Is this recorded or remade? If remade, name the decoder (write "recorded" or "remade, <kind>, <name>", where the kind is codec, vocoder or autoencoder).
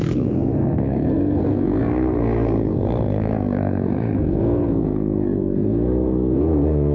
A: remade, codec, SNAC